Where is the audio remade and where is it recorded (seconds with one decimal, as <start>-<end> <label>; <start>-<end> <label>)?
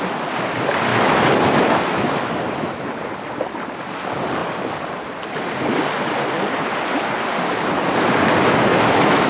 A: 0.0-0.9 recorded; 0.9-2.1 remade; 2.1-8.7 recorded; 8.7-9.3 remade